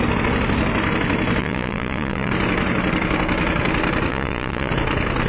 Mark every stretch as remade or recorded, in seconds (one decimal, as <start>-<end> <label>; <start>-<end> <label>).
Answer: 0.0-1.4 recorded; 1.4-2.3 remade; 2.3-4.1 recorded; 4.1-4.7 remade; 4.7-5.3 recorded